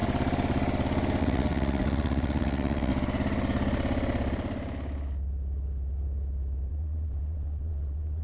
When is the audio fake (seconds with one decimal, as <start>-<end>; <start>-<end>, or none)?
1.2-2.9; 6.7-8.2

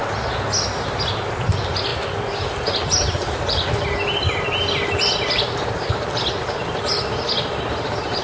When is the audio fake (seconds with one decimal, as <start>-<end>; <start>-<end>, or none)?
none

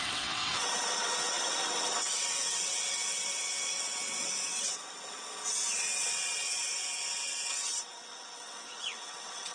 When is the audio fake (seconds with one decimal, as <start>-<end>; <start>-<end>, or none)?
0.0-9.5

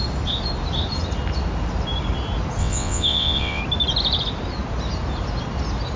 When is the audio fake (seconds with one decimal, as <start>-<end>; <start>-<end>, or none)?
2.6-3.6

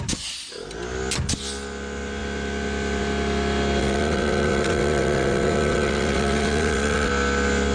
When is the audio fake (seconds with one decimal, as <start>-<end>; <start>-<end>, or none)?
3.8-7.1

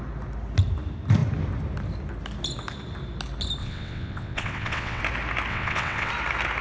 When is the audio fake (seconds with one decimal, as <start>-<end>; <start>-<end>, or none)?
3.6-5.0; 5.5-6.1